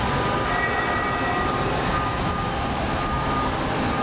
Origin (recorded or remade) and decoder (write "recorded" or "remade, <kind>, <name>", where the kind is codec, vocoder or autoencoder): recorded